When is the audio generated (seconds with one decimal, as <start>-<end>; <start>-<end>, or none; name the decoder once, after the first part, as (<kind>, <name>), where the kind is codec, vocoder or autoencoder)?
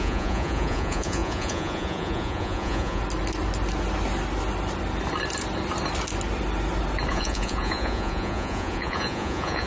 0.0-3.0 (vocoder, Vocos); 7.1-9.7